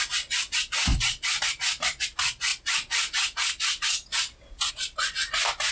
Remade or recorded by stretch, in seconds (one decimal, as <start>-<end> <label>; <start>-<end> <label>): 0.0-5.7 recorded